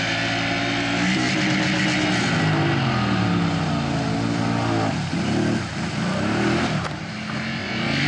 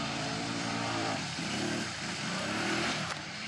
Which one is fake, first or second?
second